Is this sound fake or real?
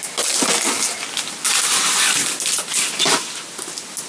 real